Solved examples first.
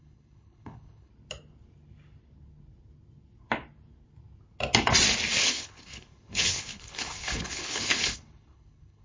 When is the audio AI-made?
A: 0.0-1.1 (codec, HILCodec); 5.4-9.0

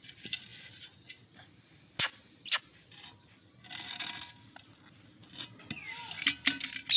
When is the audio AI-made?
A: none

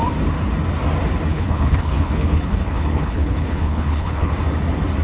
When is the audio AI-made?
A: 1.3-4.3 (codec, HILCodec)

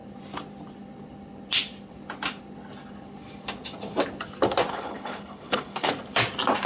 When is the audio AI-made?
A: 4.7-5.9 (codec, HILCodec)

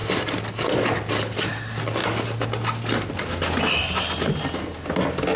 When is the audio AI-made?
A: none

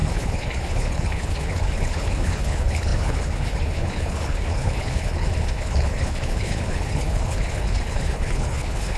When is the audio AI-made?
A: 0.0-9.0 (codec, HILCodec)